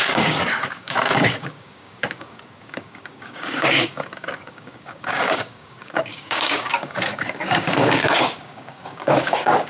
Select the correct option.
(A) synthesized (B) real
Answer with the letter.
A